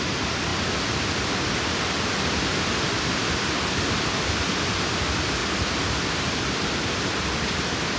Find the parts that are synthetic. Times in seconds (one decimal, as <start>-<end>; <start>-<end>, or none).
none